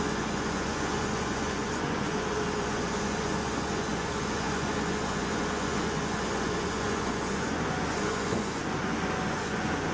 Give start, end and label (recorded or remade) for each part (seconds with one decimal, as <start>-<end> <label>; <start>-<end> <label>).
0.0-9.9 remade